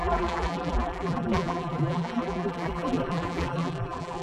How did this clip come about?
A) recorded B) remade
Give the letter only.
B